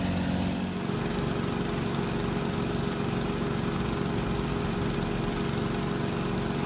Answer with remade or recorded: recorded